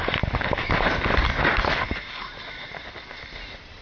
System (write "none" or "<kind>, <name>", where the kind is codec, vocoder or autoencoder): none